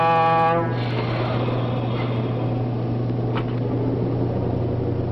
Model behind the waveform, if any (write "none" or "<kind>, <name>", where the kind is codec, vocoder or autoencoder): none